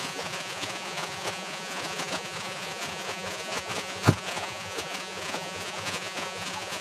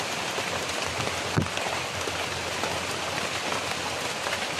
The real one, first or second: second